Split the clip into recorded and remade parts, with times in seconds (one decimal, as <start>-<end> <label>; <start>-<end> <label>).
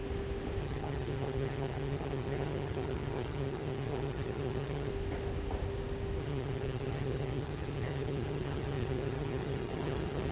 0.0-0.6 recorded; 0.6-4.9 remade; 4.9-6.2 recorded; 6.2-10.3 remade